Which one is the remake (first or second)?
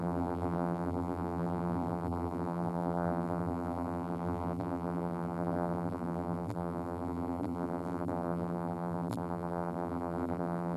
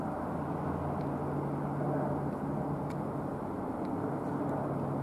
first